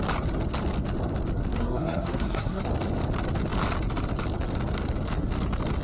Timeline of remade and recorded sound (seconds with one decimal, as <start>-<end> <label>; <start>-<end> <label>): 0.0-1.5 recorded; 1.5-2.6 remade; 2.6-5.8 recorded